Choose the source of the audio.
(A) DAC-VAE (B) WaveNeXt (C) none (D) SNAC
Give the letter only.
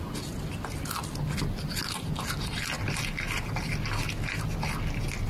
C